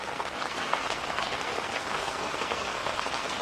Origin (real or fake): fake